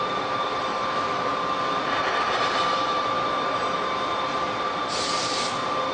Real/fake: fake